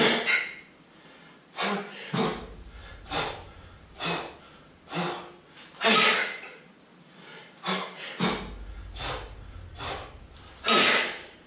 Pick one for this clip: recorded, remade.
recorded